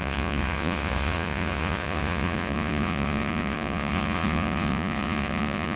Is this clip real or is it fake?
fake